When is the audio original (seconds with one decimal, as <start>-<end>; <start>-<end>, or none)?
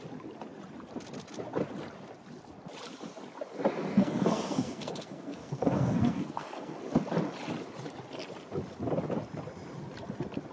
0.0-3.9; 6.8-10.5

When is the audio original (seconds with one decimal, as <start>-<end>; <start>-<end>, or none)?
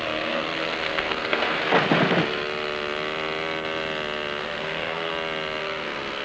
1.6-4.4; 5.1-5.6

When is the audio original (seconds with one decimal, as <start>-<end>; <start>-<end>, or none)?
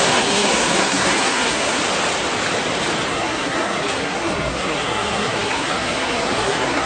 1.8-3.1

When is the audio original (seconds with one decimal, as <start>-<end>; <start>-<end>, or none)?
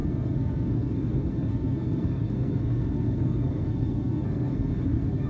none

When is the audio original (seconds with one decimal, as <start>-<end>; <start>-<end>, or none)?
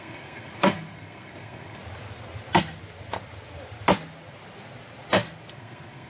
1.8-5.5